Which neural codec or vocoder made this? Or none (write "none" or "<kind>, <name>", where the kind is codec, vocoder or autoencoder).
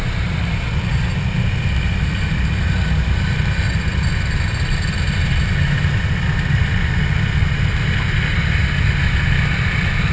none